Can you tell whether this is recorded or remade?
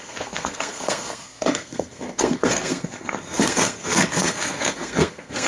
remade